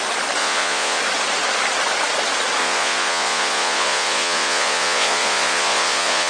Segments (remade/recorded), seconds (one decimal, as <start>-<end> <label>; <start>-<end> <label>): 0.0-0.4 recorded; 0.4-1.0 remade; 1.0-2.6 recorded; 2.6-6.3 remade